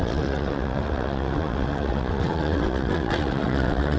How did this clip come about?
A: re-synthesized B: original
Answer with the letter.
A